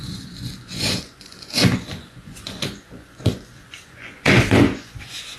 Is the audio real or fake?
fake